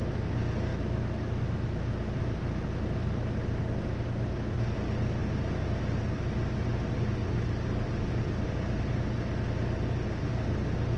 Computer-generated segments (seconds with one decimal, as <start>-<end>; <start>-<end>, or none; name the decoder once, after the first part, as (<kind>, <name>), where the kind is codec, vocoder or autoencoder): 0.7-1.8 (autoencoder, DAC-VAE)